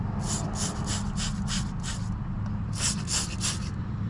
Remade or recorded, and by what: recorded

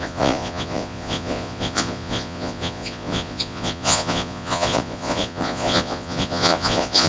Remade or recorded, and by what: remade, vocoder, Vocos